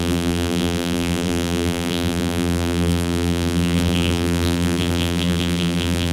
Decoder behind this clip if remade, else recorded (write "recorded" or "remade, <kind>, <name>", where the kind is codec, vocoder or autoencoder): remade, vocoder, BigVGAN v2